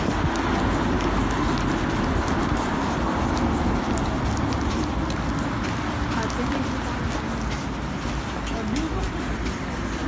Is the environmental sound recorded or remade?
recorded